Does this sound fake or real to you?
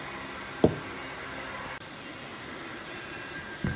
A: real